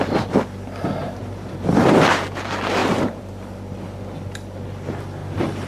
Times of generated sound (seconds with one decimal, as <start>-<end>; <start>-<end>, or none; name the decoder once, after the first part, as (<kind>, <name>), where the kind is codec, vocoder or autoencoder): 1.0-2.0 (vocoder, BigVGAN v2); 2.8-3.3